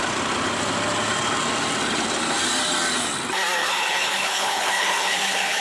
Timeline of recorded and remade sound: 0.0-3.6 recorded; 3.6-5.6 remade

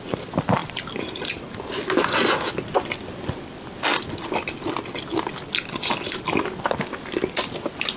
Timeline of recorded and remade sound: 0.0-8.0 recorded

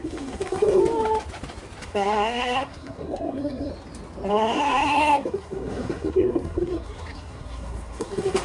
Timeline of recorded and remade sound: 0.0-0.8 remade; 0.8-1.8 recorded; 1.8-3.7 remade; 3.7-4.3 recorded; 4.3-8.4 remade

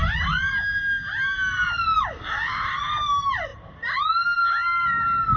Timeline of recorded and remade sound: 0.0-5.4 recorded